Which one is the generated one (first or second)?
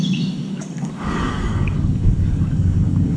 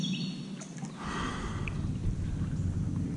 first